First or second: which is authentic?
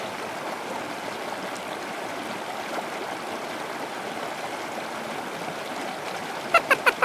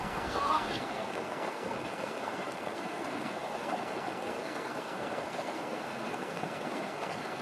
first